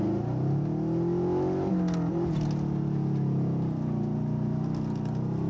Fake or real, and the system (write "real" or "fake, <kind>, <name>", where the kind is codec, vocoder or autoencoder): real